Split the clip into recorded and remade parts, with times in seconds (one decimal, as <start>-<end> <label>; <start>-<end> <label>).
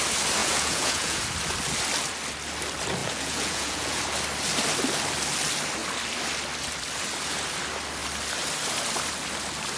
0.0-0.4 recorded; 0.4-1.2 remade; 1.2-3.0 recorded; 3.0-4.0 remade; 4.0-9.8 recorded